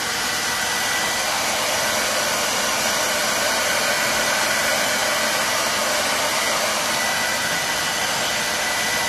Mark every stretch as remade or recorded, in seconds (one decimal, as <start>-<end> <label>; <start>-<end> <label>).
0.0-3.2 recorded; 3.2-4.6 remade; 4.6-9.1 recorded

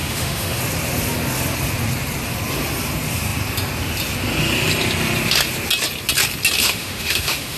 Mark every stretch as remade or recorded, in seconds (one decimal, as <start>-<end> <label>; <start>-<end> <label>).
0.0-0.6 remade; 0.6-6.6 recorded; 6.6-7.6 remade

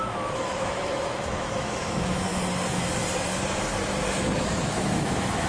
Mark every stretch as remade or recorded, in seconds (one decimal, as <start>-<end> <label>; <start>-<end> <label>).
0.0-2.3 remade; 2.3-4.4 recorded; 4.4-5.5 remade